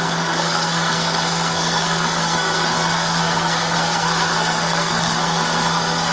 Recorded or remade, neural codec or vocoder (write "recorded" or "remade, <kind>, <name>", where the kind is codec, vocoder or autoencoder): remade, codec, SNAC